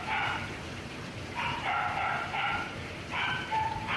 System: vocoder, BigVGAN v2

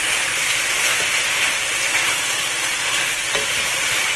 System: none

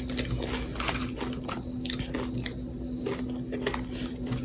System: none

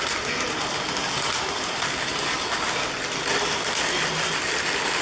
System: none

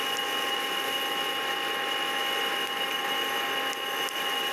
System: none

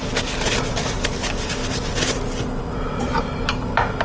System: none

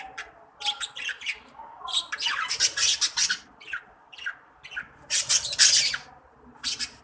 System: vocoder, BigVGAN v2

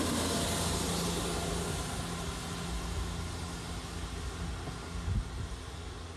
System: none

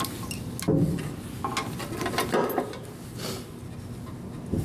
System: none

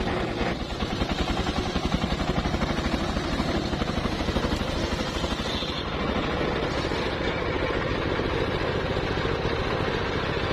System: none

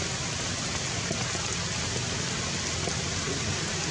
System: none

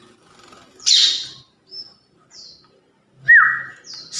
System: none